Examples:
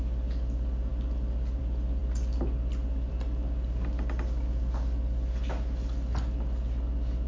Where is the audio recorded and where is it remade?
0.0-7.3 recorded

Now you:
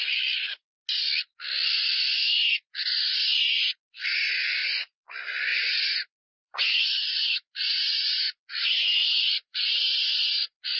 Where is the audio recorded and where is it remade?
0.0-4.6 recorded; 4.6-5.1 remade; 5.1-5.5 recorded; 5.5-7.3 remade; 7.3-9.0 recorded; 9.0-9.7 remade; 9.7-10.8 recorded